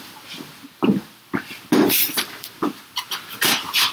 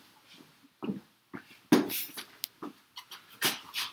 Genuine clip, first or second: second